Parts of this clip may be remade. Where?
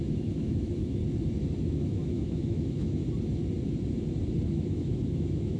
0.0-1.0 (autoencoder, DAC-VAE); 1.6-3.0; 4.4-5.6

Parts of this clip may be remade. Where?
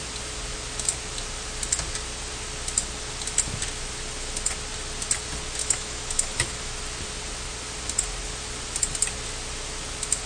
5.6-6.8 (autoencoder, DAC-VAE)